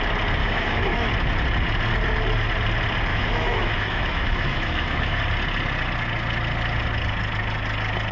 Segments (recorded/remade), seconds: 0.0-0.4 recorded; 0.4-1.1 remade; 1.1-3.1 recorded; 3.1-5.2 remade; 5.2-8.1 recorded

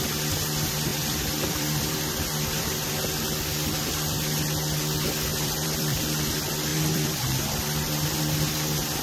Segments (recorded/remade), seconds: 0.0-0.9 recorded; 0.9-2.9 remade; 2.9-5.3 recorded; 5.3-6.0 remade; 6.0-6.7 recorded; 6.7-8.2 remade; 8.2-9.0 recorded